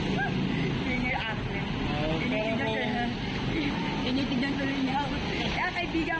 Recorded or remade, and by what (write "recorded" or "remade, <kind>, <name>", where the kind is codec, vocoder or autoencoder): recorded